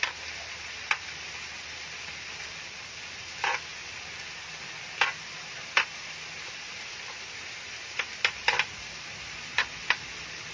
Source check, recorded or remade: recorded